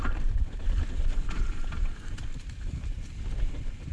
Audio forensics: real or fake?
real